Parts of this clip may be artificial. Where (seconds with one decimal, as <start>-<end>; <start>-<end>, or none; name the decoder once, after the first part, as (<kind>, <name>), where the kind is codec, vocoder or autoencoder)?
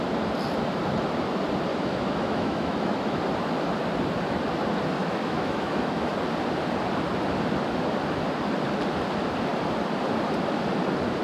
1.7-3.2 (autoencoder, DAC-VAE); 5.0-6.1